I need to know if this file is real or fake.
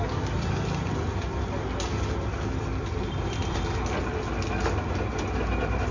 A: real